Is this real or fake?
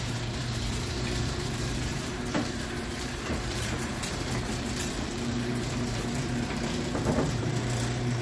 fake